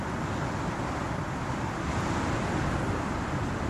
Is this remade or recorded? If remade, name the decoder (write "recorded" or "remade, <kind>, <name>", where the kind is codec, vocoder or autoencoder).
recorded